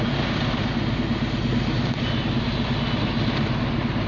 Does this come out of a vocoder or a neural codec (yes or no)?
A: no